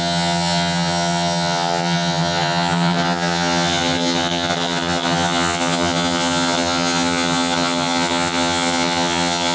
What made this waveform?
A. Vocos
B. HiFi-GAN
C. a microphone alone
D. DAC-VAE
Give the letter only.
B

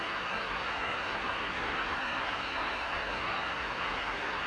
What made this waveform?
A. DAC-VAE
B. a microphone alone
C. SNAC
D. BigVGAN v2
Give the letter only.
C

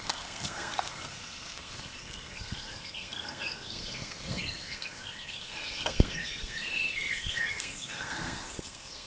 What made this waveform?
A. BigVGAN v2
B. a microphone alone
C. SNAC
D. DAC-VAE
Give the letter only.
C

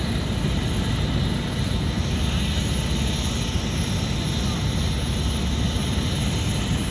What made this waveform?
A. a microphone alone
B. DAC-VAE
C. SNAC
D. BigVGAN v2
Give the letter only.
A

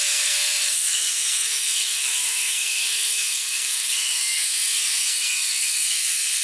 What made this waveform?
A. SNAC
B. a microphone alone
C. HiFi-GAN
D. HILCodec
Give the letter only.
A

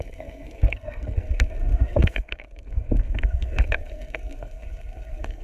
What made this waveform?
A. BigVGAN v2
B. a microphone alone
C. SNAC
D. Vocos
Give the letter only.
C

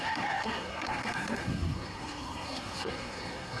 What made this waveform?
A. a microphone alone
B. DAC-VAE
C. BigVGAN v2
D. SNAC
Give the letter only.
D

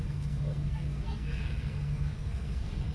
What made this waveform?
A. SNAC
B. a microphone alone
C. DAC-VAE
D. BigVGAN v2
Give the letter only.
A